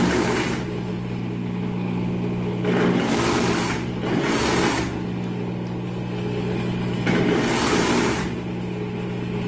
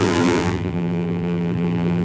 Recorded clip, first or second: first